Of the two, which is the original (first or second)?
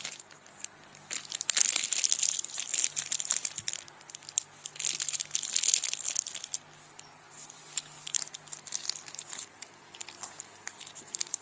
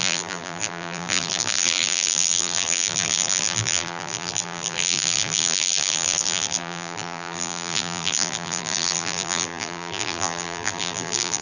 first